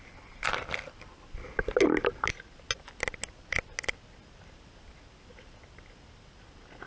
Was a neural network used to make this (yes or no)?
no